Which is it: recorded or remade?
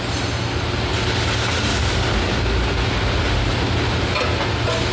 recorded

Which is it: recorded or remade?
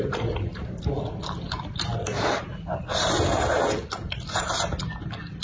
remade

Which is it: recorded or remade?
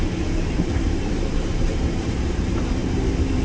remade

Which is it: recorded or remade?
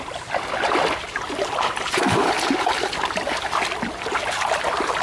recorded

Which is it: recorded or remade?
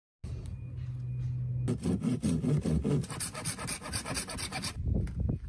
recorded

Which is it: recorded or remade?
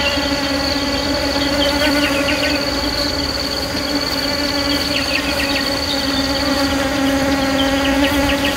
recorded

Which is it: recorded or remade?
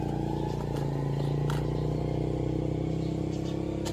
recorded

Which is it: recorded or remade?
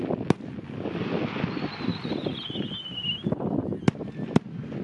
recorded